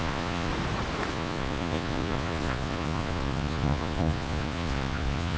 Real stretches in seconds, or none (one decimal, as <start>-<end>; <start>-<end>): 0.5-1.1